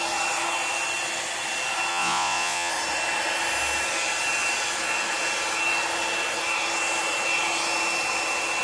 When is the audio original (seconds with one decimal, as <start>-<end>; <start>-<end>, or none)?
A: 0.0-1.9; 2.7-8.6